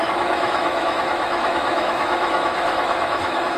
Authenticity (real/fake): fake